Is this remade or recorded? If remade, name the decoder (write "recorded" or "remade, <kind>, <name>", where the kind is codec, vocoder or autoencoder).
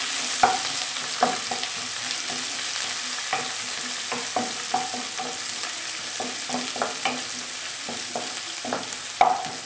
recorded